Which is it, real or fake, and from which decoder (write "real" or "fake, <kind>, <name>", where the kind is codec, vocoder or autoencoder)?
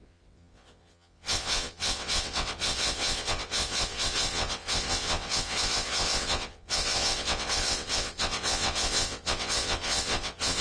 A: fake, vocoder, WaveNeXt